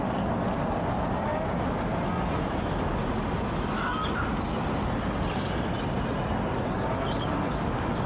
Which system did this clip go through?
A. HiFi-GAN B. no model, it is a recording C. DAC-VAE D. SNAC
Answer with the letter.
B